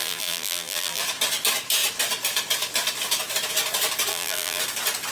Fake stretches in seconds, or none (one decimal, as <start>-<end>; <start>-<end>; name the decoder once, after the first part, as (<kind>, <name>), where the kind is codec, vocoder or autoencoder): 0.0-1.0 (vocoder, BigVGAN v2); 4.1-4.6